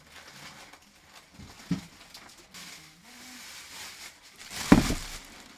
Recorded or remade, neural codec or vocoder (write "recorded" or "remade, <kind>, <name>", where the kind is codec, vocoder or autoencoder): recorded